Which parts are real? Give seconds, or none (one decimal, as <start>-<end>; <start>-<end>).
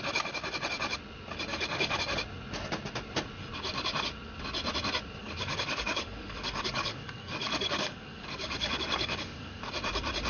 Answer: 0.0-1.5; 2.0-5.2; 9.7-10.3